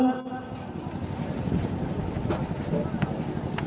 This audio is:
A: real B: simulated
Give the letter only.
A